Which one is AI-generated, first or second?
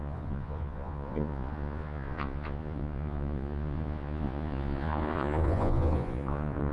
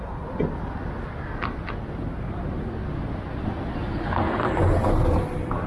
first